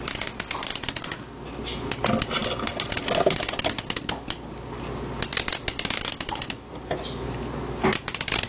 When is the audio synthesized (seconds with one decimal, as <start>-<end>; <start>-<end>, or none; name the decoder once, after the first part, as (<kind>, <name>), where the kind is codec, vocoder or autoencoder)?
none